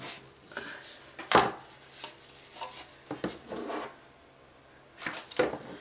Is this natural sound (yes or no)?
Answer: yes